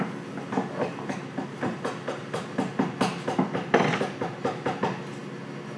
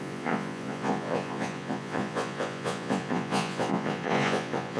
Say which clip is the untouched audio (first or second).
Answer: first